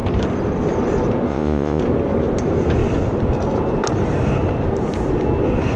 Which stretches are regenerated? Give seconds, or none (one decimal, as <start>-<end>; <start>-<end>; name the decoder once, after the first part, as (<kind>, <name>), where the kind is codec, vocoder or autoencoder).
1.3-1.8 (vocoder, Vocos)